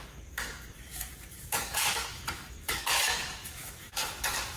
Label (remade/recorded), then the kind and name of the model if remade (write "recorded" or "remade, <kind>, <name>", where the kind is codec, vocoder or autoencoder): remade, codec, DAC